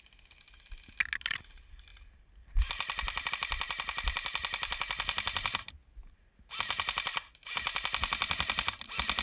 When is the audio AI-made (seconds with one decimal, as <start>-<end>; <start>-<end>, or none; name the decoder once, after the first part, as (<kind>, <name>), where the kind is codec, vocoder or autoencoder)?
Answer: none